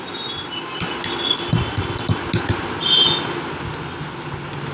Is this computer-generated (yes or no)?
no